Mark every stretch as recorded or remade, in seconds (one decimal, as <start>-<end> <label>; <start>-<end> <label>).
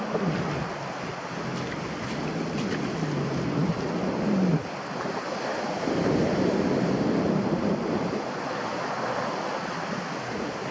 0.0-5.5 recorded; 5.5-6.2 remade; 6.2-10.7 recorded